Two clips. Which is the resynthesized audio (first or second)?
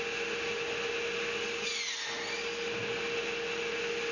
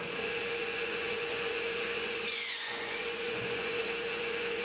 second